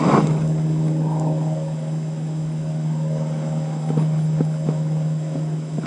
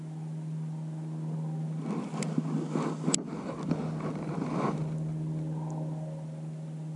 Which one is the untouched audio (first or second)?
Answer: second